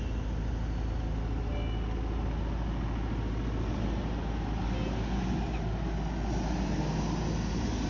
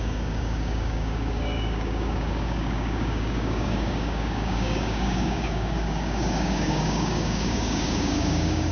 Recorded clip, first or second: first